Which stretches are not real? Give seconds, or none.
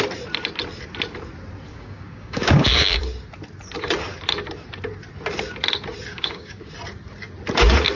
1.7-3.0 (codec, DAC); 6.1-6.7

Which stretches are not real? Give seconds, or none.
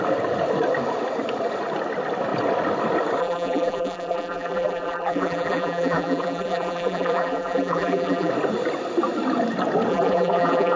3.2-8.3 (vocoder, BigVGAN v2); 9.9-10.8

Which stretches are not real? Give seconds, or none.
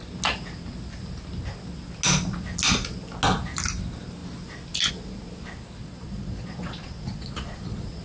5.8-8.0 (vocoder, Vocos)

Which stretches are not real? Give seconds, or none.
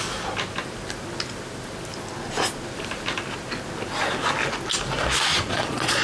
5.3-6.0 (vocoder, Vocos)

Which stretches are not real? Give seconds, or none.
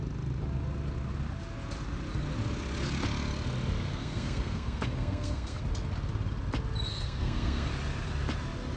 3.9-5.6 (codec, SNAC); 6.9-7.7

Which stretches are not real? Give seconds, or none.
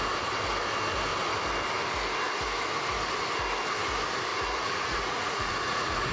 4.3-6.1 (vocoder, Vocos)